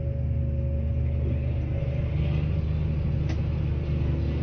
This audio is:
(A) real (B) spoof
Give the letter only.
A